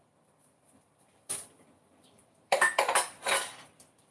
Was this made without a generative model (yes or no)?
no